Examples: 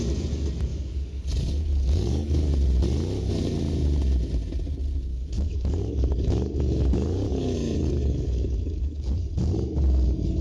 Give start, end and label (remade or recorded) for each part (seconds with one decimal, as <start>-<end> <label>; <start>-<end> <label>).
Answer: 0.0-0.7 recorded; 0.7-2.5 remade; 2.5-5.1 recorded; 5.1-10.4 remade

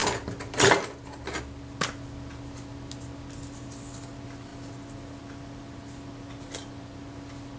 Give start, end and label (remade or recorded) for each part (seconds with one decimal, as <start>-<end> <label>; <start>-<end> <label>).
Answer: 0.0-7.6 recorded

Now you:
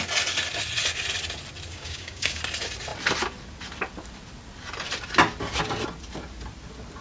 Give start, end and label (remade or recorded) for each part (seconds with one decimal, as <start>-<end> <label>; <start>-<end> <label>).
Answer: 0.0-1.7 recorded; 1.7-2.4 remade; 2.4-7.0 recorded